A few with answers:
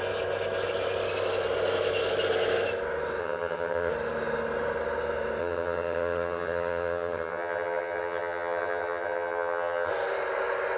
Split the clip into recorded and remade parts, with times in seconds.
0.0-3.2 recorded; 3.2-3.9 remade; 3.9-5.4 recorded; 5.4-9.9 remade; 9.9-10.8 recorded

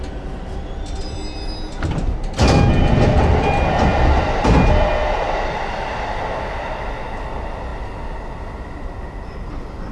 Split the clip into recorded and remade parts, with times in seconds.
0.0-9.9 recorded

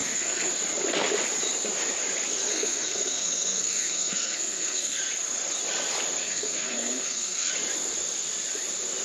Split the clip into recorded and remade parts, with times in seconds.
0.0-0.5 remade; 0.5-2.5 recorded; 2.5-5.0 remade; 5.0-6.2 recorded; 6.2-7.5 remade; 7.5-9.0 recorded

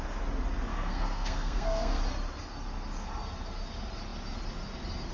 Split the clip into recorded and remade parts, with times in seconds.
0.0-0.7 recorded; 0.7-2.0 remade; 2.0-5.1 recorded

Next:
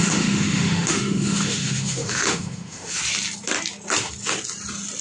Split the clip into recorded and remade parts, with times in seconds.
0.0-3.0 remade; 3.0-5.0 recorded

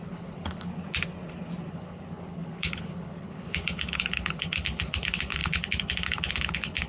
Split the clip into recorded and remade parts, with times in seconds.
0.0-0.7 remade; 0.7-1.7 recorded; 1.7-6.9 remade